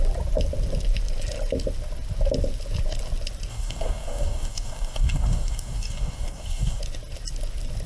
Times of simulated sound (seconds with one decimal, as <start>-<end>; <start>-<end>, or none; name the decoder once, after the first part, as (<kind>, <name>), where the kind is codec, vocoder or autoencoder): 3.5-6.8 (codec, DAC)